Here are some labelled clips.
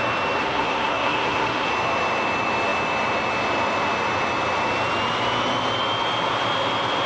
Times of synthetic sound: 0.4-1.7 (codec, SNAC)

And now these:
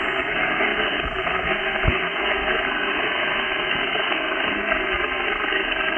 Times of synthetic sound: 0.0-6.0 (codec, SNAC)

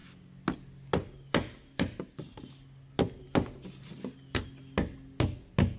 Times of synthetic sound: none

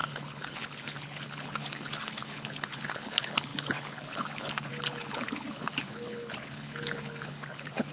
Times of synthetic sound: 0.0-7.9 (codec, HILCodec)

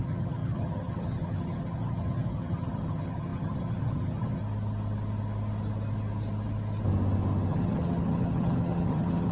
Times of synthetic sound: 0.0-4.4 (vocoder, HiFi-GAN); 7.5-9.3